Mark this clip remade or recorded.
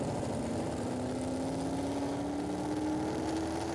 recorded